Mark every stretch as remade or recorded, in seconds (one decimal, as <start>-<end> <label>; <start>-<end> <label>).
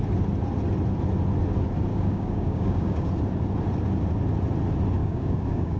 0.0-1.9 recorded; 1.9-3.1 remade; 3.1-5.0 recorded; 5.0-5.8 remade